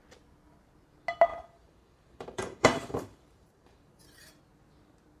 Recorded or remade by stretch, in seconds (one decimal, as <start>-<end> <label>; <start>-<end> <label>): 0.0-1.3 recorded; 1.3-4.4 remade; 4.4-5.2 recorded

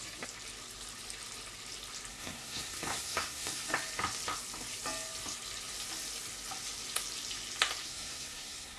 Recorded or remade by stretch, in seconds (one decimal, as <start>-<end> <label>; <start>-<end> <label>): 0.0-2.1 recorded; 2.1-3.7 remade; 3.7-7.8 recorded; 7.8-8.8 remade

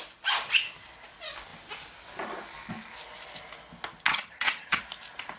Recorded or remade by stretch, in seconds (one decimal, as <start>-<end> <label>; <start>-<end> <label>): 0.0-4.1 recorded; 4.1-4.8 remade; 4.8-5.4 recorded

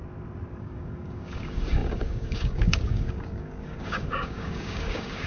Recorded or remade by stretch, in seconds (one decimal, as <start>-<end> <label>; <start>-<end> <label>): 0.0-0.6 recorded; 0.6-5.3 remade

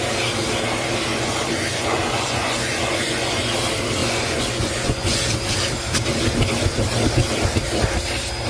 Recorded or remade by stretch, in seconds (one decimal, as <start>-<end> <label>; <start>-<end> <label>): 0.0-1.1 recorded; 1.1-3.5 remade; 3.5-4.0 recorded; 4.0-5.2 remade; 5.2-8.5 recorded

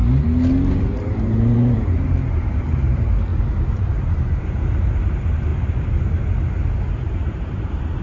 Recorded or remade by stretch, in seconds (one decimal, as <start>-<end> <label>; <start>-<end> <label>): 0.0-0.8 recorded; 0.8-5.5 remade; 5.5-6.9 recorded; 6.9-8.0 remade

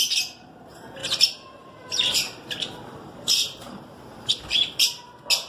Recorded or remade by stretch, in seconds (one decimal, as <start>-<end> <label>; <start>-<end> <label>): 0.0-1.0 recorded; 1.0-4.3 remade; 4.3-5.5 recorded